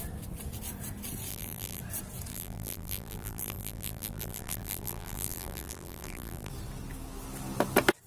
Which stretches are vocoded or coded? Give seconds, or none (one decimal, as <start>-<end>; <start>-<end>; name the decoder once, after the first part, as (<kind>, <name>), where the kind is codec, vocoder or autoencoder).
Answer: 1.3-1.8 (vocoder, BigVGAN v2); 2.3-6.5